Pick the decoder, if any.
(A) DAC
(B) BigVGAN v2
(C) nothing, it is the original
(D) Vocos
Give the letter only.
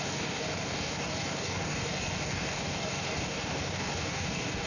A